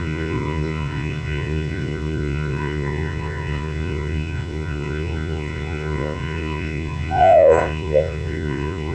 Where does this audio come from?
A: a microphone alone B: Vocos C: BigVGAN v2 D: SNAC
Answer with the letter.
B